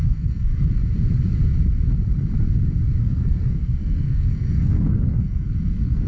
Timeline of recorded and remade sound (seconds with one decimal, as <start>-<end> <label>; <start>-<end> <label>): 0.0-0.8 remade; 0.8-3.0 recorded; 3.0-6.1 remade